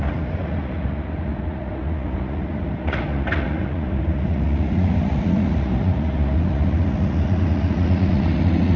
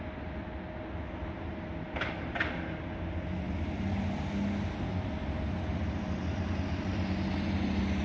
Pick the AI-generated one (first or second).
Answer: first